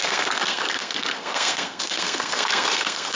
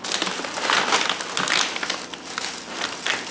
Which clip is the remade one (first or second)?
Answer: first